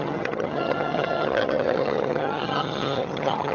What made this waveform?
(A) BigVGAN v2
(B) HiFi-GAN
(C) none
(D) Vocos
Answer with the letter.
B